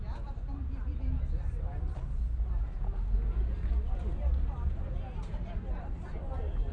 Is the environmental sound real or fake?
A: real